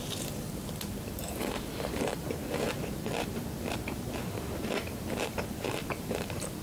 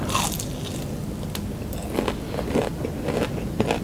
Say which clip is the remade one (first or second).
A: first